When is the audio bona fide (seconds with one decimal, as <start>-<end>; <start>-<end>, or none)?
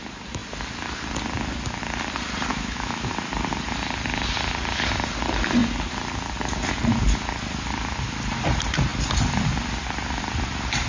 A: 0.0-2.5; 3.1-10.9